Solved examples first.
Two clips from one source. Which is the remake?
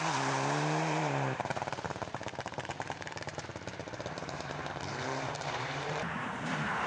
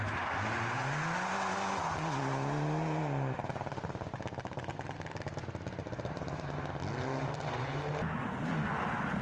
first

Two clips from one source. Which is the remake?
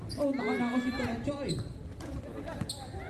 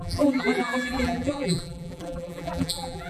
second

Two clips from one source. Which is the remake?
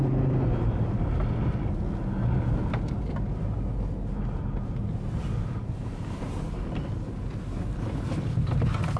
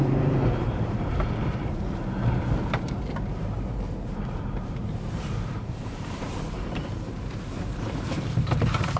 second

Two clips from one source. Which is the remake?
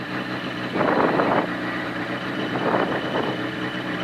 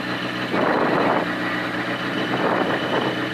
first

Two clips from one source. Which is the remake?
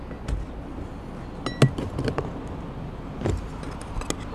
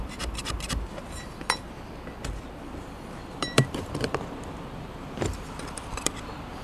second